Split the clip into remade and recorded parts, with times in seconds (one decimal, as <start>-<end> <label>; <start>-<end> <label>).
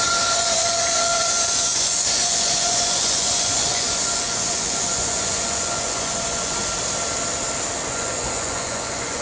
0.0-6.6 remade; 6.6-7.9 recorded; 7.9-9.2 remade